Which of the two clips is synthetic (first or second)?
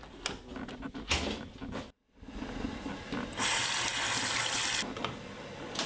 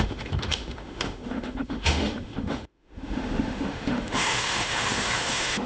second